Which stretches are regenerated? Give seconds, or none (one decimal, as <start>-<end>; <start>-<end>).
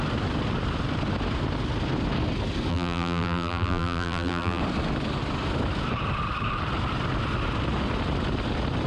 2.7-4.6